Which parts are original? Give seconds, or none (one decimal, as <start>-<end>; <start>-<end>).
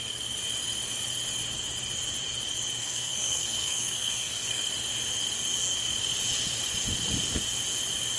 0.0-2.8; 4.6-8.2